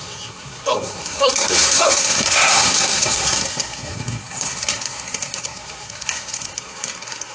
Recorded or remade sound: remade